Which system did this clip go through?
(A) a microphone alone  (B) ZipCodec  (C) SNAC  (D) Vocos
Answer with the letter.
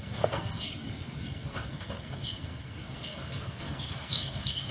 C